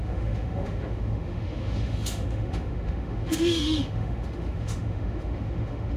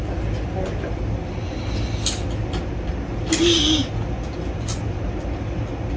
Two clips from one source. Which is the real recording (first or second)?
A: second